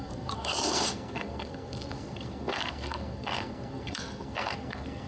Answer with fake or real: fake